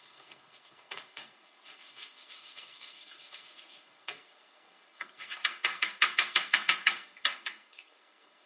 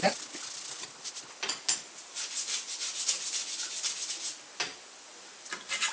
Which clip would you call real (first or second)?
second